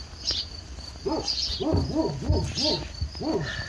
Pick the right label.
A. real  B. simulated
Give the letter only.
A